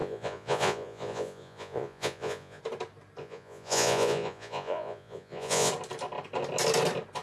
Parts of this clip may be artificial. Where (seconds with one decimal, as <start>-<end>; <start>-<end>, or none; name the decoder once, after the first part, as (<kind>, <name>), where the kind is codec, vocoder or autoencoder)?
0.0-2.6 (vocoder, Vocos); 3.2-5.7

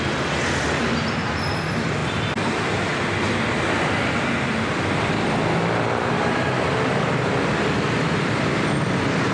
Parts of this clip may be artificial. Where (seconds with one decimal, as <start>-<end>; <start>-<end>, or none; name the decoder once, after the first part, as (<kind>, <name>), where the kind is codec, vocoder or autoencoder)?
none

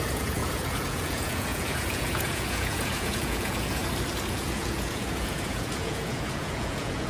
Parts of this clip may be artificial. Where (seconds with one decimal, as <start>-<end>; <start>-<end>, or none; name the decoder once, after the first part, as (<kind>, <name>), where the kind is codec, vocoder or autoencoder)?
0.0-3.8 (vocoder, Vocos); 4.3-7.1